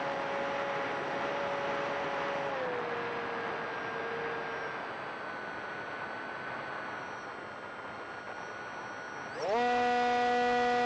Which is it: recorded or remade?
recorded